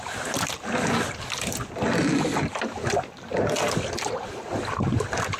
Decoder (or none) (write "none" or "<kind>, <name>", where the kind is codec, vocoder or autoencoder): none